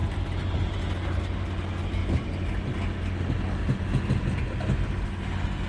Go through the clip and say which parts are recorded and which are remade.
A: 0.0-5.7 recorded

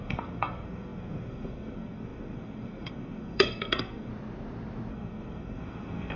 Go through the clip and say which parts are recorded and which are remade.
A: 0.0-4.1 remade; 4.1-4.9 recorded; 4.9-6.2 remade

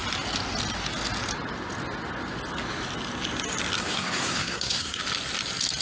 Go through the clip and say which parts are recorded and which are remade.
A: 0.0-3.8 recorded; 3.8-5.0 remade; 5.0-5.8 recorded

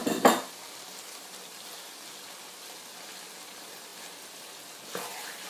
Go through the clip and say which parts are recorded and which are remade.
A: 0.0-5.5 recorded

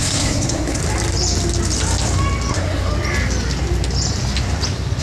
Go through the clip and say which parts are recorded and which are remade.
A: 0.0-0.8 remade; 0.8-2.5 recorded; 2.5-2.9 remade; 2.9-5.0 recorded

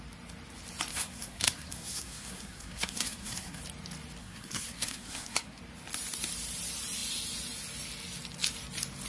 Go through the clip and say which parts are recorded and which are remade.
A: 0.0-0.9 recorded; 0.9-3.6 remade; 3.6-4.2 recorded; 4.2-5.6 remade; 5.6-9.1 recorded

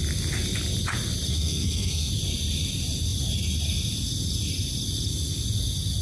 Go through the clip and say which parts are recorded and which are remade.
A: 0.0-1.3 recorded; 1.3-2.1 remade; 2.1-6.0 recorded

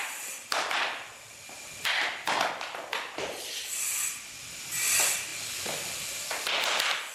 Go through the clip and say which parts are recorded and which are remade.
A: 0.0-7.1 recorded